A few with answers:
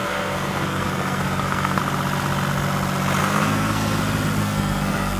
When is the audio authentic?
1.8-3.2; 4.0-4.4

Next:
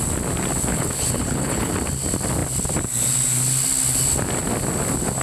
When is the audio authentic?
0.0-0.7; 1.7-5.2

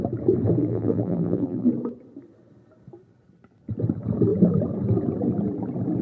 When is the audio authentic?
0.0-0.6; 1.7-6.0